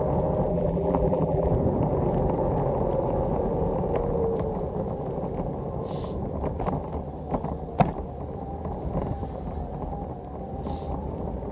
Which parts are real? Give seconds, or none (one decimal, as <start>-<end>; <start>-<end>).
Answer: 0.0-0.5; 1.5-11.5